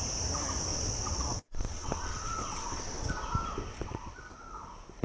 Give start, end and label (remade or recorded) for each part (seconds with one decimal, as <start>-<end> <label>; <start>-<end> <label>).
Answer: 0.0-0.7 recorded; 0.7-3.1 remade; 3.1-3.7 recorded; 3.7-4.4 remade; 4.4-5.0 recorded